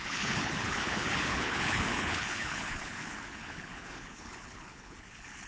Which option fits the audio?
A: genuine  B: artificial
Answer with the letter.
B